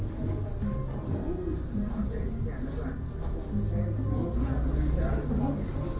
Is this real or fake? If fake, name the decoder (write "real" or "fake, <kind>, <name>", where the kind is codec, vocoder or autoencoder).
real